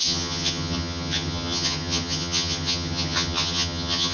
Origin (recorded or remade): remade